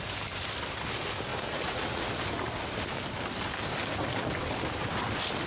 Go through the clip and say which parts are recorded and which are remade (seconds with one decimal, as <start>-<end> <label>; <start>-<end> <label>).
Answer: 0.0-1.3 recorded; 1.3-2.1 remade; 2.1-5.5 recorded